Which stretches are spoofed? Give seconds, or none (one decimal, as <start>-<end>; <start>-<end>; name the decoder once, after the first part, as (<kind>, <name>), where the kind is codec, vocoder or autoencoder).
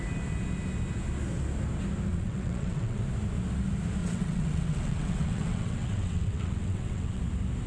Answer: 2.1-3.0 (vocoder, WaveNeXt); 4.0-7.2